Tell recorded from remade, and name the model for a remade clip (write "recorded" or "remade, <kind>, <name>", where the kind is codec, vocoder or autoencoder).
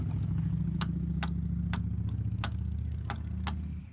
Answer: recorded